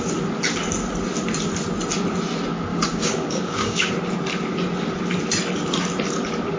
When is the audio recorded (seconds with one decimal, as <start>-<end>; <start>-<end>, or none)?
0.0-2.7; 3.9-6.6